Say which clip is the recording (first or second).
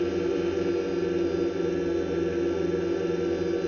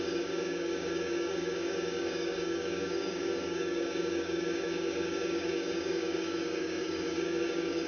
first